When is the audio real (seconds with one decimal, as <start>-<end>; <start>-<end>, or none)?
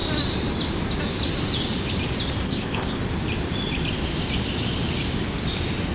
0.0-2.5; 3.0-5.9